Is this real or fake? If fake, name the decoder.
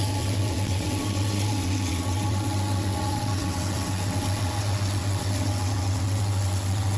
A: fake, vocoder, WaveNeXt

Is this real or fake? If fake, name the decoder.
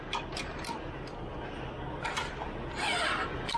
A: real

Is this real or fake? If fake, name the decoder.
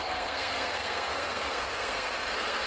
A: fake, codec, SNAC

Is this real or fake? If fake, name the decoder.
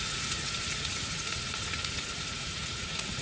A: fake, vocoder, Vocos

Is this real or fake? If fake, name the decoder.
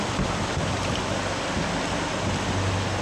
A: real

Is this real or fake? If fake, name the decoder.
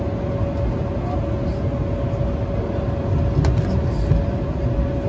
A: real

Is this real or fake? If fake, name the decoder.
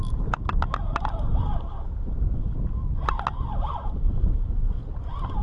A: real